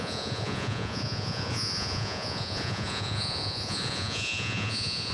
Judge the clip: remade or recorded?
remade